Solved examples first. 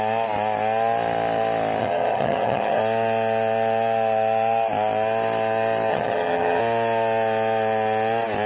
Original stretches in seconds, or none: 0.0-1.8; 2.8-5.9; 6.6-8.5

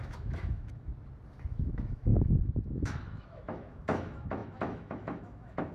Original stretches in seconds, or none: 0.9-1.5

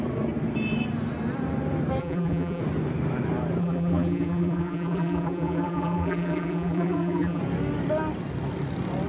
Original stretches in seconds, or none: 0.0-2.0; 2.6-3.6; 7.4-9.1

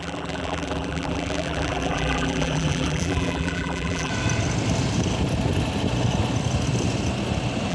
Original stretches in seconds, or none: 4.1-7.7

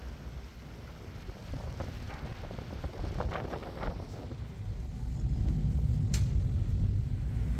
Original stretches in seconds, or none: 0.0-7.6

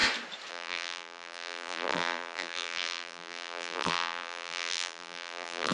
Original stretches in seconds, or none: 0.0-0.5

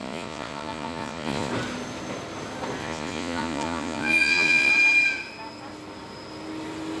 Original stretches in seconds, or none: 1.5-2.8; 4.7-7.0